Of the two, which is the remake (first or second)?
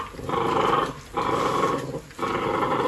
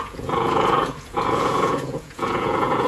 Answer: second